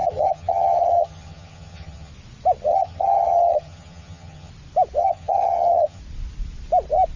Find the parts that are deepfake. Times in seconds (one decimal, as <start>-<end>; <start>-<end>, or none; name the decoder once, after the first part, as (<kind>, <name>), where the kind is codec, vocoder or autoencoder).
0.0-2.1 (vocoder, HiFi-GAN); 2.7-4.5; 5.0-6.0